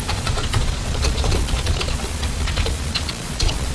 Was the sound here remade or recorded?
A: remade